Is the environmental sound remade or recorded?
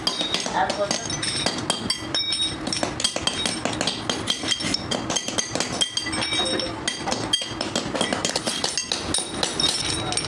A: recorded